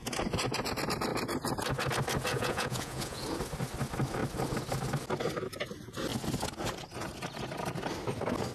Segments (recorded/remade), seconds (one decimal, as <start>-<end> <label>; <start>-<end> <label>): 0.0-2.3 recorded; 2.3-3.2 remade; 3.2-8.5 recorded